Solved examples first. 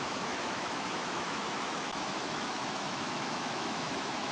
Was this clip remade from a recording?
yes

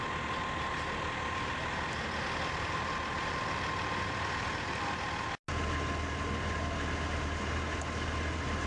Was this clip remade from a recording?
no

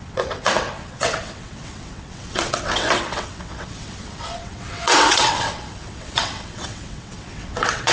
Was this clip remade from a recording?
yes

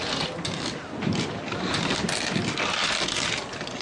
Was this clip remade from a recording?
no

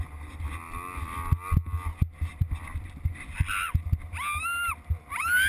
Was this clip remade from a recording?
no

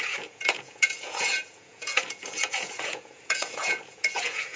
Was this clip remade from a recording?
yes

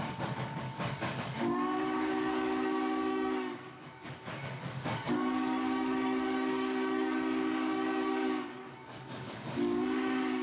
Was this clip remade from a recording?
yes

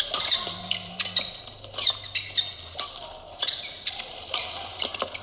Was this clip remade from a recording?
no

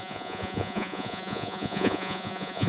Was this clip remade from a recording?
yes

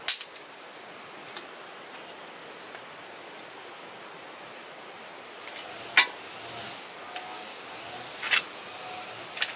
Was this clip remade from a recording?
no